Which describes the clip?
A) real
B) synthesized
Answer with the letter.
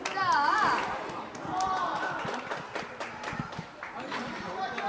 A